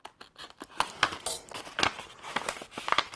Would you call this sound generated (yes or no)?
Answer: no